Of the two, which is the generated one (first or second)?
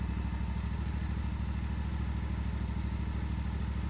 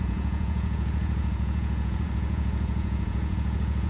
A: second